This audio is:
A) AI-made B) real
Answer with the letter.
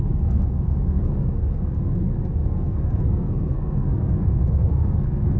A